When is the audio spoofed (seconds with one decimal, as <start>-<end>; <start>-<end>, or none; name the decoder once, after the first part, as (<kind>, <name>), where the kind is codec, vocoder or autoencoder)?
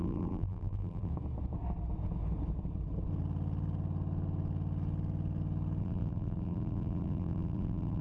0.0-1.1 (vocoder, BigVGAN v2); 5.8-8.0